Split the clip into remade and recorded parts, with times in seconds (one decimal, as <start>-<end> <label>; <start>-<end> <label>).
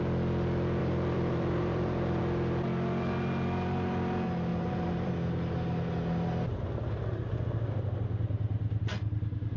0.0-0.8 recorded; 0.8-2.2 remade; 2.2-4.5 recorded; 4.5-5.1 remade; 5.1-9.6 recorded